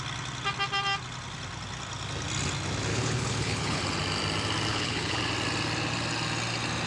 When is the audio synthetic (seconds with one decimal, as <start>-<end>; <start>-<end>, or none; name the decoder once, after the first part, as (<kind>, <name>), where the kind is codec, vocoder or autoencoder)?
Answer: 2.9-3.8 (codec, HILCodec); 4.7-5.2